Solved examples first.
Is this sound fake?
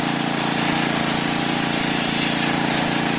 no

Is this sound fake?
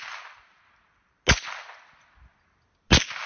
no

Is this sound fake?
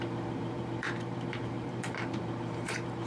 yes